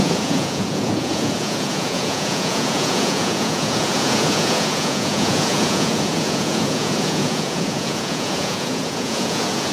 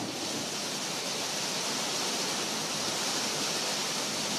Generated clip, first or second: first